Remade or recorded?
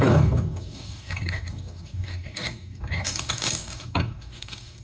remade